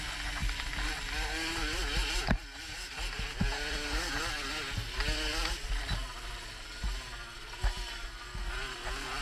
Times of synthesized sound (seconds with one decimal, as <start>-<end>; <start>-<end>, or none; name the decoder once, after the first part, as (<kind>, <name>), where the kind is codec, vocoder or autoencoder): none